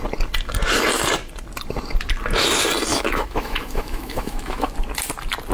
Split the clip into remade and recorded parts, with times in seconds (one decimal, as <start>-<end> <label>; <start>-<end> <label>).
0.0-2.9 recorded; 2.9-4.7 remade; 4.7-5.5 recorded